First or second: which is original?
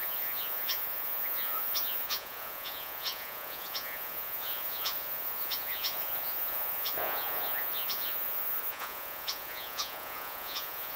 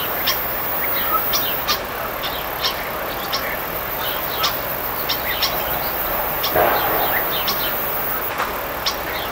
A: second